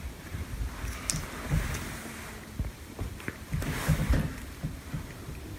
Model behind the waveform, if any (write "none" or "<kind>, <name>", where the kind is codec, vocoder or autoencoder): vocoder, BigVGAN v2